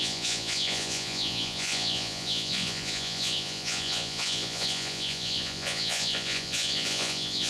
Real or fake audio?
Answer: fake